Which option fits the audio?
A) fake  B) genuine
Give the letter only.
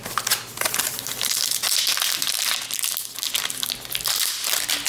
B